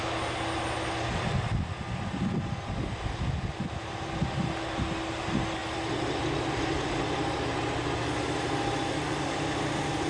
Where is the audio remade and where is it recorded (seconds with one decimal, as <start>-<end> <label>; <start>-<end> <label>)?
0.0-10.1 recorded